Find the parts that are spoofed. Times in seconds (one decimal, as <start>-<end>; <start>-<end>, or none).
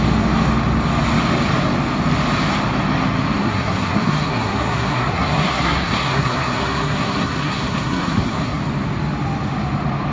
3.4-8.6